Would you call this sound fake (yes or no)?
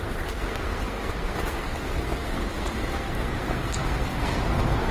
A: yes